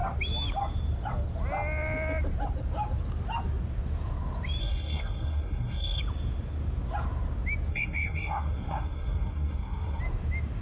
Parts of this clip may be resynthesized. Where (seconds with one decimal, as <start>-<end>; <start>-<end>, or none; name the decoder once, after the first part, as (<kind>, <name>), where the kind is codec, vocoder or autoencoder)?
4.6-6.0 (codec, SNAC); 7.7-10.0